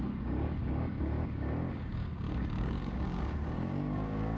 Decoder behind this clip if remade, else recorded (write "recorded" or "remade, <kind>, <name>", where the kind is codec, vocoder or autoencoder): remade, codec, DAC